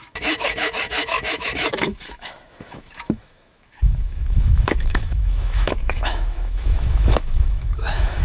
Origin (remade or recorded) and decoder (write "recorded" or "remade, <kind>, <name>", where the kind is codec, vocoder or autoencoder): remade, autoencoder, DAC-VAE